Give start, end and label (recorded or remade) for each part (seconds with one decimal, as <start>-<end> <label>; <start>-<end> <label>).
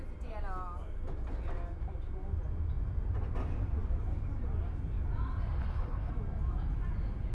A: 0.0-5.6 recorded; 5.6-6.1 remade; 6.1-7.3 recorded